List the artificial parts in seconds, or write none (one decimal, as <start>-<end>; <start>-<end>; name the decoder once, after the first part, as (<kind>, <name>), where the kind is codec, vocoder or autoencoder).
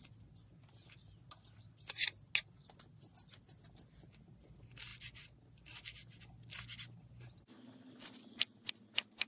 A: none